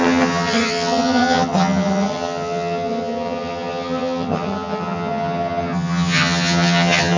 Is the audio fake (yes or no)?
yes